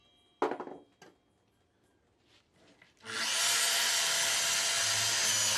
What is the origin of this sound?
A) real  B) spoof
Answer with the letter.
A